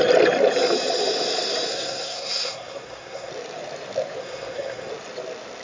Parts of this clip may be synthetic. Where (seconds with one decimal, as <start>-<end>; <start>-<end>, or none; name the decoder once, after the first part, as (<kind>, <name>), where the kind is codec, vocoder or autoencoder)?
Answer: 1.7-3.3 (codec, SNAC); 4.2-4.9

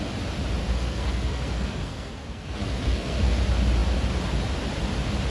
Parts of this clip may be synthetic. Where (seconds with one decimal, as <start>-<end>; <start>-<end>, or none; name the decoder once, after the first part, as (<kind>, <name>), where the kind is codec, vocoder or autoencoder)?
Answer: 0.6-3.4 (codec, SNAC)

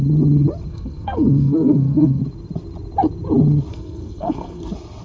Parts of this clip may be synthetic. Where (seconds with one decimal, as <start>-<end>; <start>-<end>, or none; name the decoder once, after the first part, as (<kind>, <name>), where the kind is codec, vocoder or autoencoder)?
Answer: 0.7-2.2 (codec, SNAC); 3.7-4.6

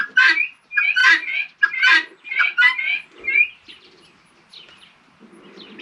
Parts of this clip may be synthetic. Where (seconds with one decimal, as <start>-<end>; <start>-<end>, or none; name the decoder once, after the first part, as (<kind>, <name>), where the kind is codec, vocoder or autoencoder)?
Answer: none

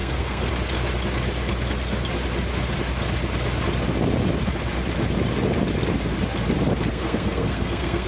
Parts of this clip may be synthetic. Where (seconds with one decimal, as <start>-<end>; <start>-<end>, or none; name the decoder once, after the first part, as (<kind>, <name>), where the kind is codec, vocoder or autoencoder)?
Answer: 0.0-0.5 (codec, SNAC); 6.9-8.1

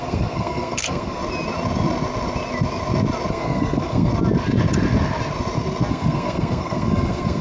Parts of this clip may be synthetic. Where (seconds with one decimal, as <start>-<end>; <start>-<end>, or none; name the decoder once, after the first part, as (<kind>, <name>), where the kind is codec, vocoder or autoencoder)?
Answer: 0.0-1.2 (codec, SNAC); 3.3-4.1; 5.9-7.4

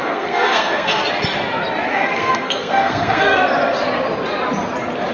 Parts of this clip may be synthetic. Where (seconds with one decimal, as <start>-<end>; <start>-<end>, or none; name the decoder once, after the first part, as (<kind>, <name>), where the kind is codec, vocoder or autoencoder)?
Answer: 0.0-1.0 (codec, SNAC); 1.9-3.4